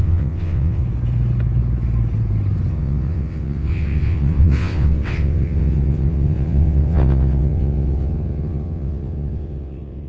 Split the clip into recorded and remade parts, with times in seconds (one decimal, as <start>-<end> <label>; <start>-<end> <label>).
0.0-0.8 remade; 0.8-2.7 recorded; 2.7-10.1 remade